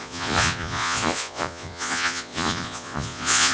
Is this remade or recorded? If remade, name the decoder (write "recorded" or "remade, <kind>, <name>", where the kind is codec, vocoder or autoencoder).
remade, vocoder, Vocos